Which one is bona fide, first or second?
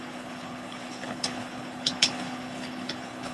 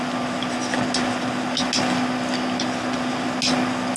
second